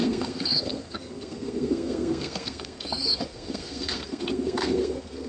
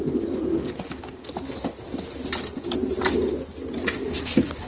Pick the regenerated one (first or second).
first